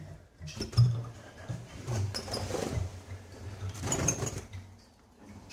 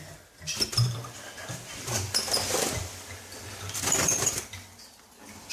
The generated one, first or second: first